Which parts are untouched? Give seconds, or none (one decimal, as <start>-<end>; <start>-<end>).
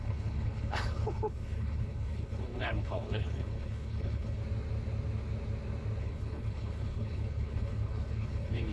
4.4-6.0